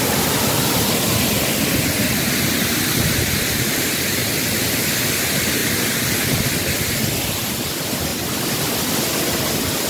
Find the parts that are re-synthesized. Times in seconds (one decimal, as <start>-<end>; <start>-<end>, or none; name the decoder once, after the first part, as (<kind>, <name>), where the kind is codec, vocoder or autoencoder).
none